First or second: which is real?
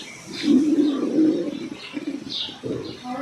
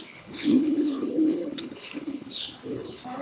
first